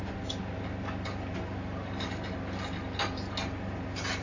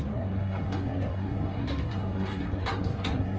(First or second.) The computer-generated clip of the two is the second